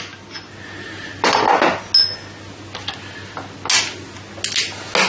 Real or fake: real